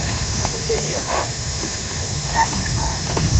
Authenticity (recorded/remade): remade